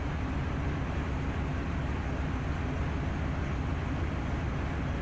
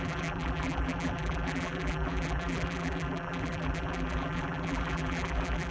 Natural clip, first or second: first